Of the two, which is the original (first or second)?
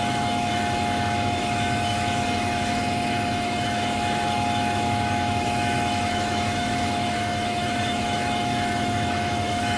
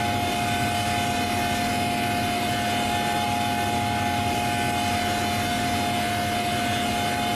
second